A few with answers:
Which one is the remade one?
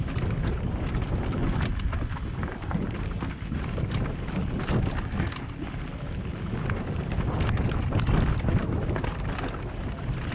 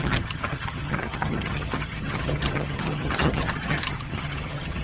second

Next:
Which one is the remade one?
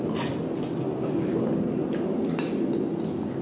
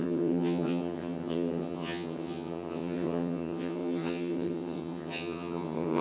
second